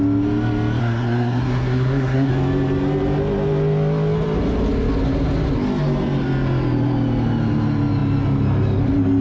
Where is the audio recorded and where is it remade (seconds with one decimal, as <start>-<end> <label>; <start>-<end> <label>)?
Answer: 0.0-0.8 recorded; 0.8-2.3 remade; 2.3-9.2 recorded